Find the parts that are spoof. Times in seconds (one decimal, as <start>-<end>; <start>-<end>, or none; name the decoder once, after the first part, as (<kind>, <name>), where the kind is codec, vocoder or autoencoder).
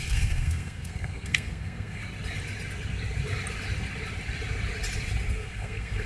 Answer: 0.0-2.0 (codec, SNAC); 5.3-6.1